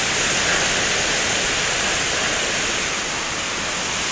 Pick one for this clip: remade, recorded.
recorded